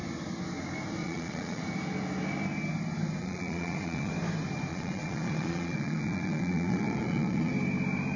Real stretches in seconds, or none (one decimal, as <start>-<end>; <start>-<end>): 0.0-1.0; 1.6-3.2; 4.1-4.7; 7.5-8.2

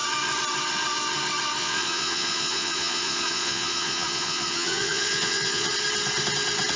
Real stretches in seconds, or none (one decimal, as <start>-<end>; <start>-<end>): 0.0-1.6; 5.7-6.8

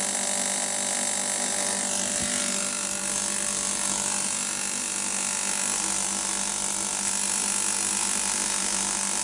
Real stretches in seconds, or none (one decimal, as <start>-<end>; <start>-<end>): 0.0-9.2